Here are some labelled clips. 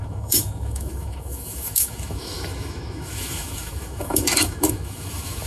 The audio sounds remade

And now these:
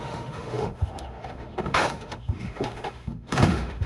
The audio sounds remade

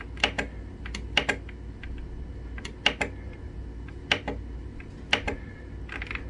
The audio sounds recorded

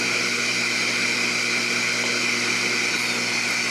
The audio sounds recorded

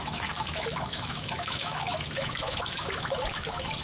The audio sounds remade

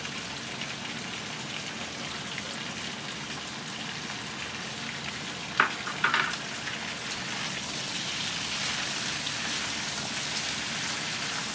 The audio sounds recorded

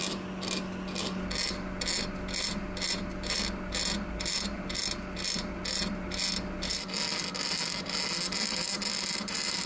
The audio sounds recorded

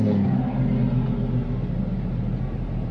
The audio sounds recorded